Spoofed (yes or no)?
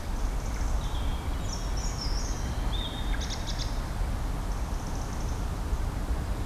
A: no